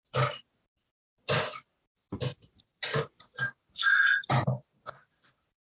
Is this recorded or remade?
recorded